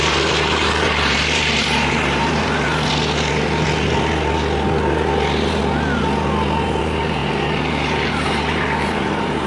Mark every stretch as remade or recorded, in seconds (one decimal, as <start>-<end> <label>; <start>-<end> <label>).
0.0-2.7 remade; 2.7-6.8 recorded; 6.8-9.5 remade